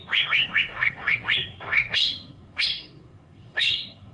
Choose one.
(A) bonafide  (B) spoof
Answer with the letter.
B